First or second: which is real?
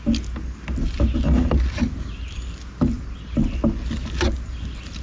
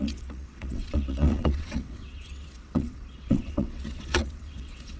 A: first